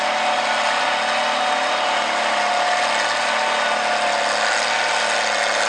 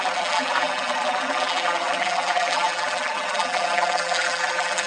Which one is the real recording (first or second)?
first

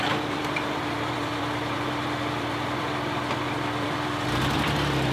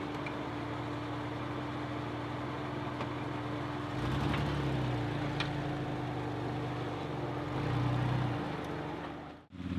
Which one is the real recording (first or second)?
second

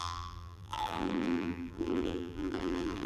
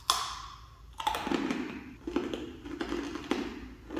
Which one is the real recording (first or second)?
second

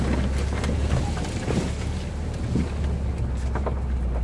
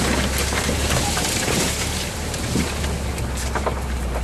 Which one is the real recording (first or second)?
first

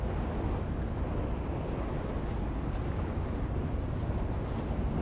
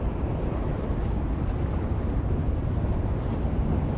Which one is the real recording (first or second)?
first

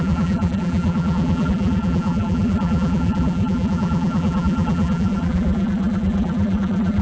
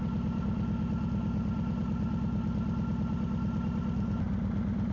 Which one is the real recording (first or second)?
second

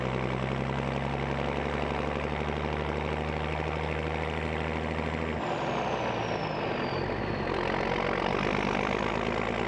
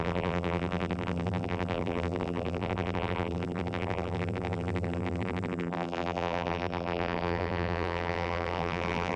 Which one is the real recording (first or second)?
first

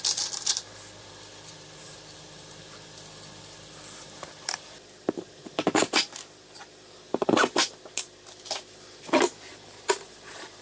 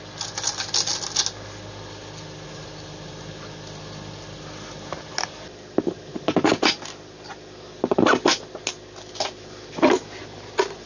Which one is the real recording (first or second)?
second